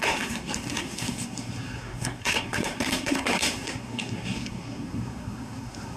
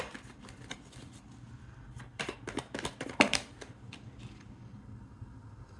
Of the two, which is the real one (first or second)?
second